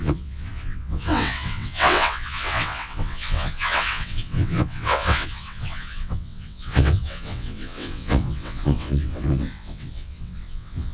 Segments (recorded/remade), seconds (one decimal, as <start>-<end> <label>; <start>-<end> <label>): 0.0-10.9 remade